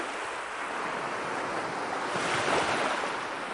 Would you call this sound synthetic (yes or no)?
no